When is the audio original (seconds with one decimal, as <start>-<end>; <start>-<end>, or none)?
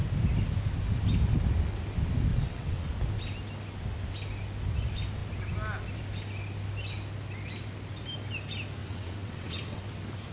0.0-2.3; 2.9-8.8; 9.8-10.3